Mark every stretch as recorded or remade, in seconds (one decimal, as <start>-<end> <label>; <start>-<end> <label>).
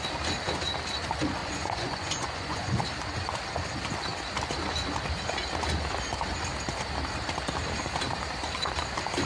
0.0-1.4 recorded; 1.4-2.8 remade; 2.8-9.3 recorded